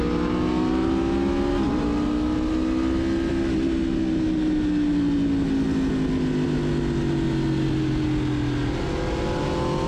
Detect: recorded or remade recorded